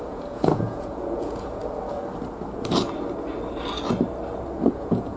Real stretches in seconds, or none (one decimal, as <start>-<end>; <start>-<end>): 1.6-4.7